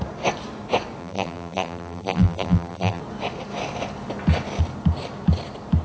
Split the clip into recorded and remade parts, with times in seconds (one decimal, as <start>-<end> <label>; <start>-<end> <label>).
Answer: 0.0-1.0 recorded; 1.0-3.0 remade; 3.0-5.8 recorded